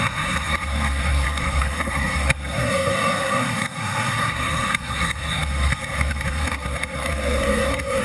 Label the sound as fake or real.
fake